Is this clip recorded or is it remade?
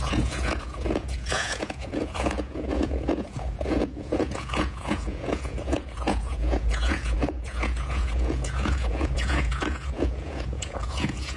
remade